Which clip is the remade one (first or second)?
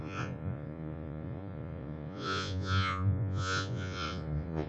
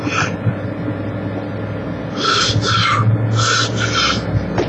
first